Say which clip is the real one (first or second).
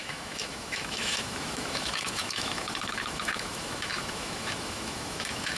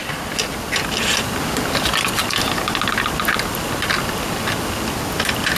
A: second